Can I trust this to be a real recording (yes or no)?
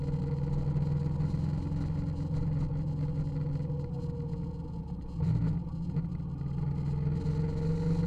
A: yes